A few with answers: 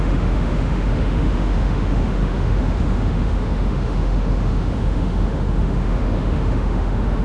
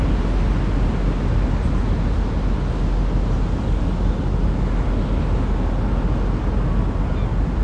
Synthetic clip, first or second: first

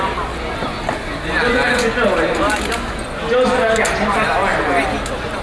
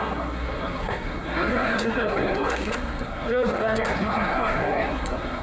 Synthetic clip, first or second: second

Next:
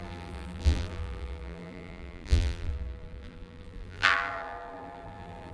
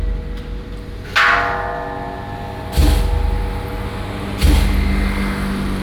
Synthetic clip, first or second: first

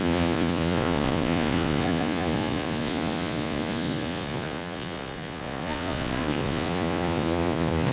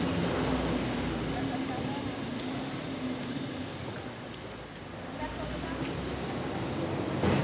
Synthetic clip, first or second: first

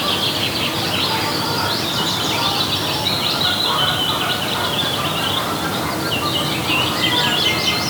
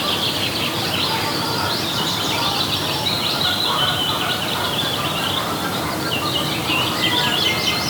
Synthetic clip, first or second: second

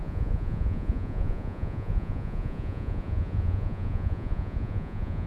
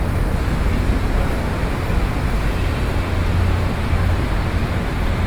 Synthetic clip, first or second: first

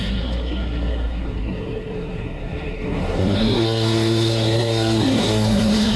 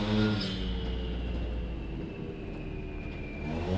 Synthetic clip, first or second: first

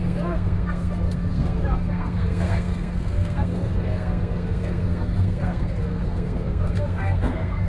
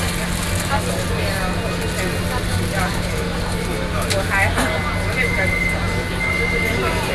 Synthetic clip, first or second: first